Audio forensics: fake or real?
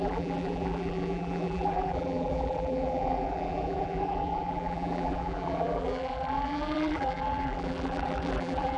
fake